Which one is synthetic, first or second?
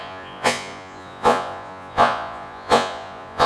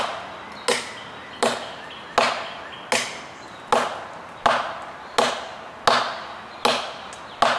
first